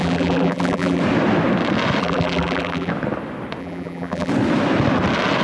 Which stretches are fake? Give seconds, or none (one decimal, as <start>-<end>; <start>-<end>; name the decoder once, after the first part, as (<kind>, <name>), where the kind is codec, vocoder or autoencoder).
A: 0.0-1.0 (vocoder, BigVGAN v2); 2.0-2.9; 3.6-4.3